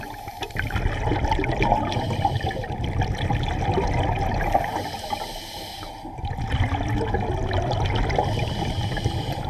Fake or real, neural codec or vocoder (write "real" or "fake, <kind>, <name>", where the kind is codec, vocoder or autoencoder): real